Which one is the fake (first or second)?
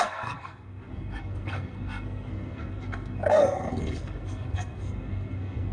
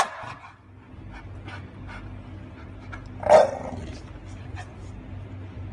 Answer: first